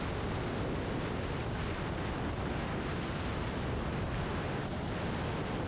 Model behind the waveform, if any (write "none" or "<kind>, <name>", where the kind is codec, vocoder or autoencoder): none